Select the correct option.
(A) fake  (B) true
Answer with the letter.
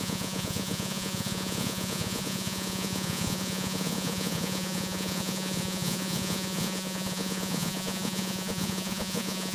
A